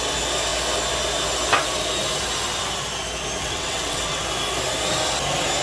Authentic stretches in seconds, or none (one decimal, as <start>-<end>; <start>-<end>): 0.0-3.4; 4.2-5.6